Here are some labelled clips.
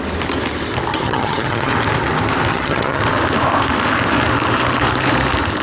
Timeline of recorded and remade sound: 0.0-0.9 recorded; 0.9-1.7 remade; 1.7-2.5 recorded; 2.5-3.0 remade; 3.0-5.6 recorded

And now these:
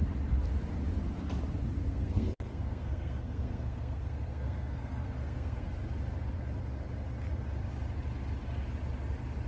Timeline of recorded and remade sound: 0.0-1.8 recorded; 1.8-5.7 remade; 5.7-9.5 recorded

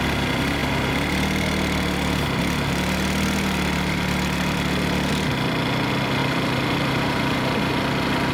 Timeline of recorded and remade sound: 0.0-6.2 recorded; 6.2-7.7 remade; 7.7-8.3 recorded

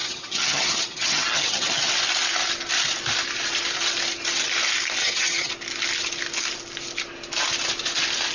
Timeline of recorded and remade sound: 0.0-1.9 remade; 1.9-5.0 recorded; 5.0-5.5 remade; 5.5-8.3 recorded